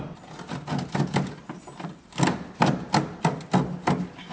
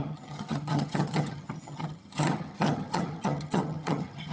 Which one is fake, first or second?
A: second